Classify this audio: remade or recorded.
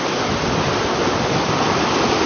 recorded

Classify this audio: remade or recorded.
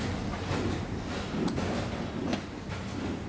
recorded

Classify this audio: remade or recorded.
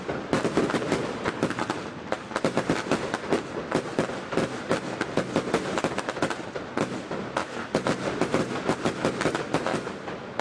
recorded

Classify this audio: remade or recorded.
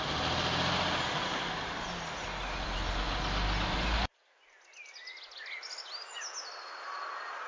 recorded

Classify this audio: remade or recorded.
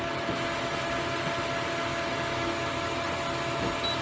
recorded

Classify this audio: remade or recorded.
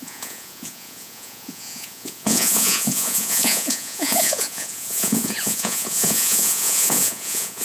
remade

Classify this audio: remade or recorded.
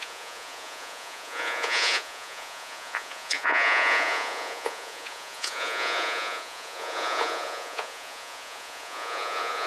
remade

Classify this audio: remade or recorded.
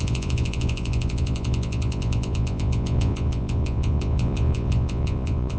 remade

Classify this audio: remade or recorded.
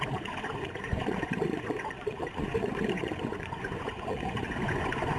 remade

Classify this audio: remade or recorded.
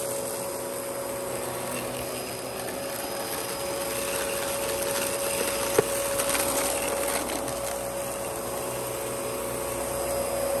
recorded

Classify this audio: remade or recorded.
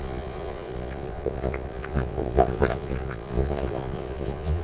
remade